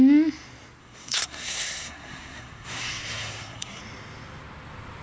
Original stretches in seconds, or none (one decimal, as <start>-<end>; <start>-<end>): 0.0-0.8; 3.8-5.0